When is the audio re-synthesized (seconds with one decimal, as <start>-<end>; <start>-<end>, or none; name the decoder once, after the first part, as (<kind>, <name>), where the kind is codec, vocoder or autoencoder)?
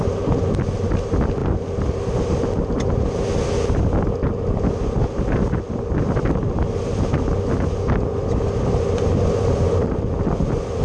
none